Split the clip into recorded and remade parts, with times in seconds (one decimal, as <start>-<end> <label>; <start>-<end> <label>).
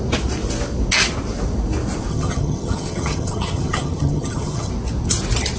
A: 0.0-2.1 recorded; 2.1-4.7 remade; 4.7-5.6 recorded